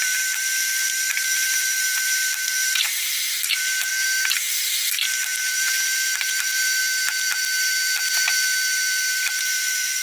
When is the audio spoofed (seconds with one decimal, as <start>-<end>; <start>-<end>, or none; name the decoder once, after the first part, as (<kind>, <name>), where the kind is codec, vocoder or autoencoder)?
0.0-3.9 (vocoder, BigVGAN v2); 5.4-6.8; 9.1-10.0